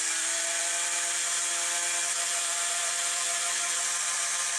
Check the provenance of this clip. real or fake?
fake